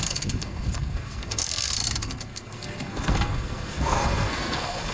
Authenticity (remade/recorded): remade